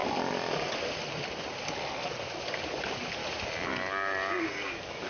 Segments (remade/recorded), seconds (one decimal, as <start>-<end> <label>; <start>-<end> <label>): 0.0-2.4 recorded; 2.4-3.2 remade; 3.2-4.4 recorded; 4.4-5.1 remade